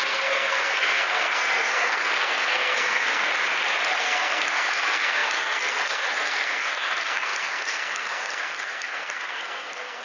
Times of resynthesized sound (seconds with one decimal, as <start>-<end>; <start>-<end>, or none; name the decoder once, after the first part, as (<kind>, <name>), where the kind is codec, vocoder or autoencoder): 0.0-3.3 (codec, SNAC); 4.0-10.0